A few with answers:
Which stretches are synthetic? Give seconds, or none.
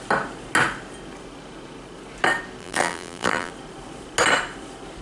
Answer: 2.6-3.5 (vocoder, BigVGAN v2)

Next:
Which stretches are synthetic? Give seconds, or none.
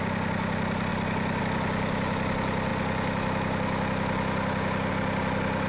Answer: none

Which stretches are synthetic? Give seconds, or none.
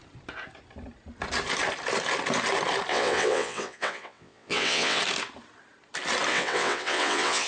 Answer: 2.9-5.0 (vocoder, WaveNeXt); 6.3-7.5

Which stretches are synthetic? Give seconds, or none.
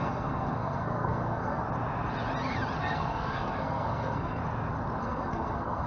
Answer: 0.0-1.6 (codec, SNAC); 2.8-4.4; 5.0-5.9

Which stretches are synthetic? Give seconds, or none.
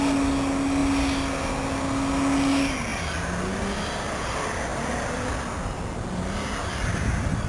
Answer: none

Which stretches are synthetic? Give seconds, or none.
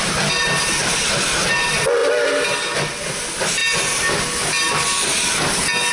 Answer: none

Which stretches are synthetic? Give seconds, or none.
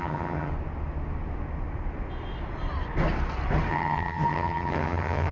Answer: 0.0-0.5 (vocoder, HiFi-GAN); 3.7-5.3